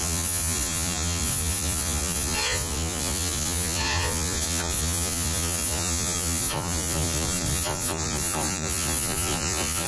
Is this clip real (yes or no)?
no